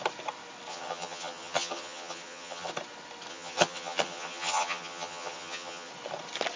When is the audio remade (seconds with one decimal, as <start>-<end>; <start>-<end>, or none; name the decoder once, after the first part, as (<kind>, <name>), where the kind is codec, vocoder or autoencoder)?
0.7-2.7 (vocoder, HiFi-GAN); 3.3-5.9